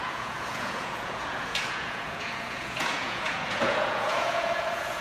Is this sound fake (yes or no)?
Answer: yes